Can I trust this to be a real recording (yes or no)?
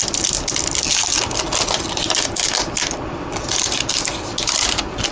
yes